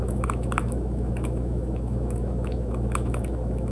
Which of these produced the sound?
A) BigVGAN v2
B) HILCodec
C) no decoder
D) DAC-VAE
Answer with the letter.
D